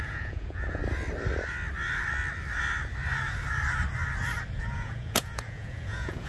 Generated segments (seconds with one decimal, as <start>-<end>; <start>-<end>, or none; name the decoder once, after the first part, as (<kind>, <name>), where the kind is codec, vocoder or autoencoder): 0.0-0.8 (vocoder, Vocos); 4.6-6.3